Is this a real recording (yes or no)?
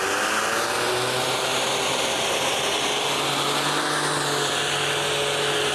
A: yes